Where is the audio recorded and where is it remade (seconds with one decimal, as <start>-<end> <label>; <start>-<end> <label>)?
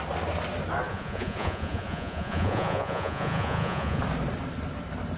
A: 0.0-0.9 recorded; 0.9-4.0 remade; 4.0-5.2 recorded